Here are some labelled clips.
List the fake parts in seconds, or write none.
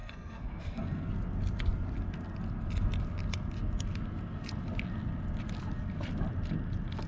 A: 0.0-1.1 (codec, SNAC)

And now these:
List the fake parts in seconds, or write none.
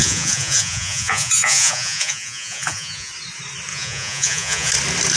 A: 0.0-3.1 (vocoder, Vocos); 3.7-4.7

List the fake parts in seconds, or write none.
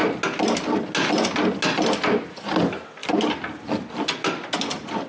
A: none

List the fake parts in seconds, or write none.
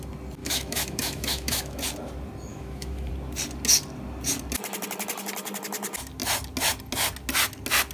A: 0.4-1.8 (autoencoder, DAC-VAE); 2.5-3.1